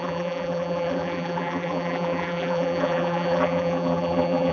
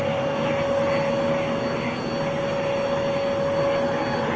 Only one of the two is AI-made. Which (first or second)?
first